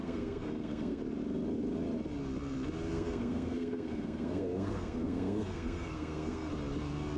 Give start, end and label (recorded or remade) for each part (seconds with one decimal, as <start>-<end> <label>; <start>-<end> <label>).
0.0-1.0 remade; 1.0-2.9 recorded; 2.9-6.5 remade; 6.5-7.2 recorded